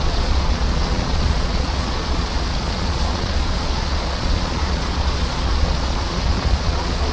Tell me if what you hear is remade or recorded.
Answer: remade